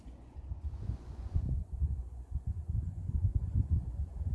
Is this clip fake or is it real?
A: fake